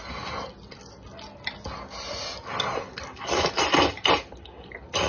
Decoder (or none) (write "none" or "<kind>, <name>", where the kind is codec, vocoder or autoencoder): none